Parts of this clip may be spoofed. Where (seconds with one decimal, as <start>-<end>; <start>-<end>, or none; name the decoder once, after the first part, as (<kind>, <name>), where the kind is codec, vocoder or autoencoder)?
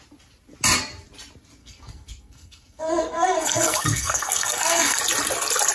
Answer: 1.6-5.0 (codec, SNAC)